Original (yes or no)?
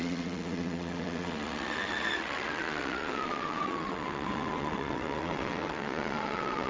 no